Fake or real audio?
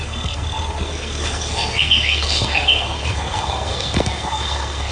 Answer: fake